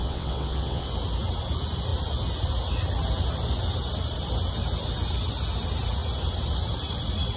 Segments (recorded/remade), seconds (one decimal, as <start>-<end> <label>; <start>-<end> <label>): 0.0-0.9 remade; 0.9-7.4 recorded